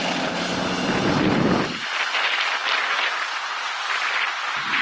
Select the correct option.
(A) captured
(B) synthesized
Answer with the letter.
A